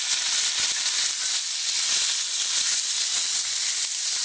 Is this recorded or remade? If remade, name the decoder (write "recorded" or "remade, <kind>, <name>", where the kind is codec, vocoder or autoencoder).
recorded